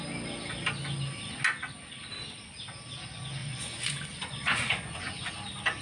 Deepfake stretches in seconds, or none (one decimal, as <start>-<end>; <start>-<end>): 3.4-5.3

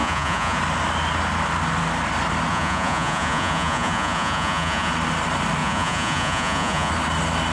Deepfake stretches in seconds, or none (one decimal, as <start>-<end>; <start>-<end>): 0.0-0.6; 2.5-4.9; 5.6-6.9

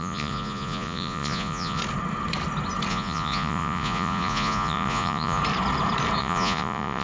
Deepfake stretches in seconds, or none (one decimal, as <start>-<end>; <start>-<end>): 0.0-1.8; 2.9-5.4; 6.2-7.0

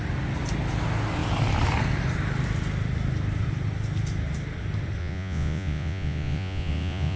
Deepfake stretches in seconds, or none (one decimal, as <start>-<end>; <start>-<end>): 5.0-7.2

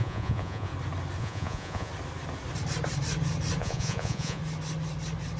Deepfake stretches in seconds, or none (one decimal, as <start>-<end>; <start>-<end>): 0.0-0.7; 1.2-1.9; 3.6-4.4

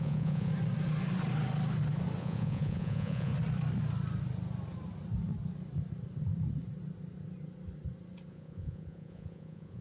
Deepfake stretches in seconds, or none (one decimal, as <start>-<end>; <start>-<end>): 0.0-0.5; 2.2-3.3; 8.3-9.8

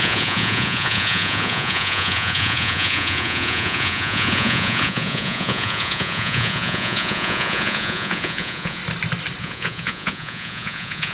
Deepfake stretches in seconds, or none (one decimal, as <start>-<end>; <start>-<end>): 0.0-8.8; 9.4-11.1